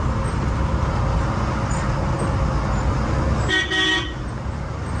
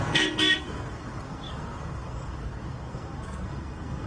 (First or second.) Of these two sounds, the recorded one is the first